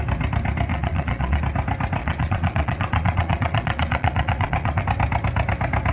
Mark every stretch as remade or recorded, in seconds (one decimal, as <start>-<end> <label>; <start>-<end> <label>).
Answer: 0.0-0.7 recorded; 0.7-1.4 remade; 1.4-2.0 recorded; 2.0-4.8 remade; 4.8-5.9 recorded